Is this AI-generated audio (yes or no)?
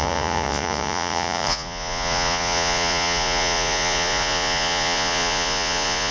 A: yes